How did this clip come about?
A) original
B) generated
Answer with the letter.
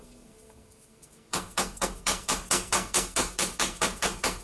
B